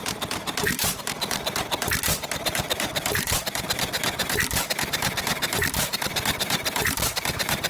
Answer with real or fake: fake